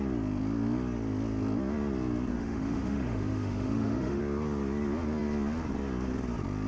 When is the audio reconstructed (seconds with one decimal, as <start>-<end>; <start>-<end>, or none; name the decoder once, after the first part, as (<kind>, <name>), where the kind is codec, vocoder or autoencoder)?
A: 2.3-4.2 (autoencoder, DAC-VAE)